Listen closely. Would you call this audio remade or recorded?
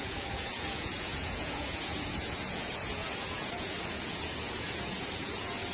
remade